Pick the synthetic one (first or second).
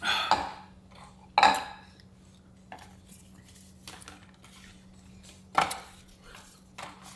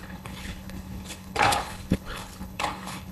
second